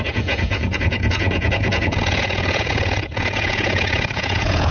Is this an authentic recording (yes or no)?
no